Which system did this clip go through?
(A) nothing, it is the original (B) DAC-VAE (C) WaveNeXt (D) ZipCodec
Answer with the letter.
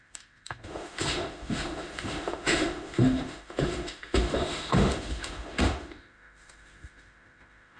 B